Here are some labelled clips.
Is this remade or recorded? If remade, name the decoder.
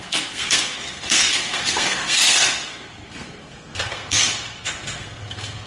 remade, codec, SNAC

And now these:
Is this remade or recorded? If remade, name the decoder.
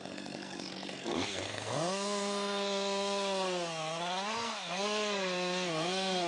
remade, codec, SNAC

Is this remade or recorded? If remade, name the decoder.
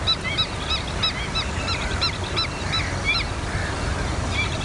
recorded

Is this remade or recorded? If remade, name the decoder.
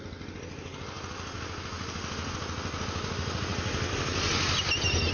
recorded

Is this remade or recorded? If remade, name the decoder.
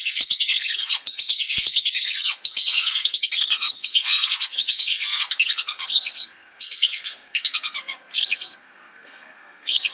remade, codec, SNAC